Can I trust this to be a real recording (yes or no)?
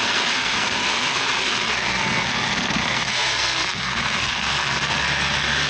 no